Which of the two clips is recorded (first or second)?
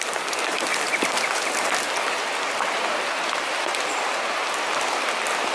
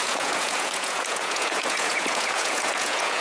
first